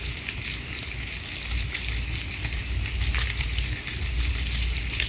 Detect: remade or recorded recorded